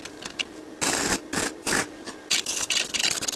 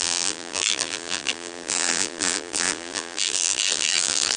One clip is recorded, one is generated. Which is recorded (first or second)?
first